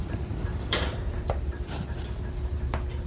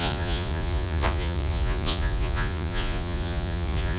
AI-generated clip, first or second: second